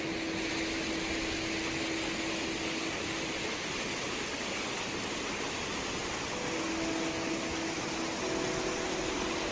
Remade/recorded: recorded